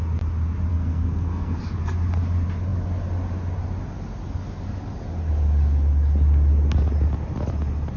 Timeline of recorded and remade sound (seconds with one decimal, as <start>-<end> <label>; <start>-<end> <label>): 0.0-0.7 recorded; 0.7-1.6 remade; 1.6-8.0 recorded